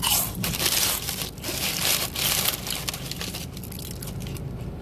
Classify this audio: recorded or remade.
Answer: recorded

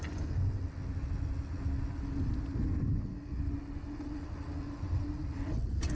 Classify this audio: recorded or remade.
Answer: recorded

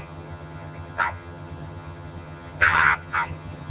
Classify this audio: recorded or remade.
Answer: remade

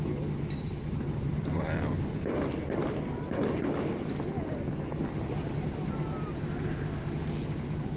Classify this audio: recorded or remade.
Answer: recorded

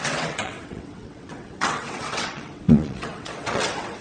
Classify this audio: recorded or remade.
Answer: remade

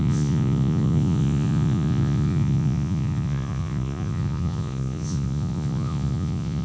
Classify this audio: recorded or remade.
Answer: remade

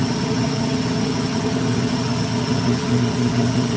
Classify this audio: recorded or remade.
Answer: remade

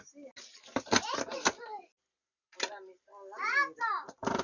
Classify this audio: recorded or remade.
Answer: recorded